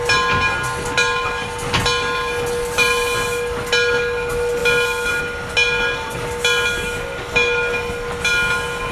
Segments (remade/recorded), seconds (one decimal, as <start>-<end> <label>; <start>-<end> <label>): 0.0-8.9 recorded